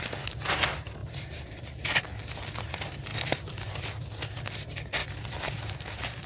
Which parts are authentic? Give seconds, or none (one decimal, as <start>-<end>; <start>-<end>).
0.0-1.0; 2.0-3.1; 3.8-5.0